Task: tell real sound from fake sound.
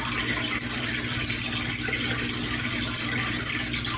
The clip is real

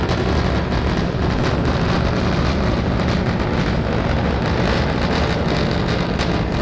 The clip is real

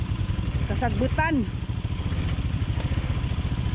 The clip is real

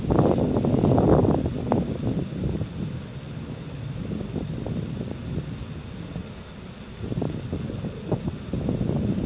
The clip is real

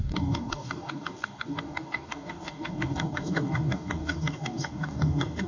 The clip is fake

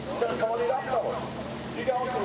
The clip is real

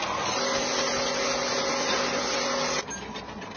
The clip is real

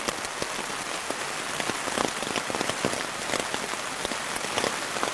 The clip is real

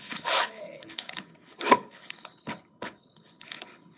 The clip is fake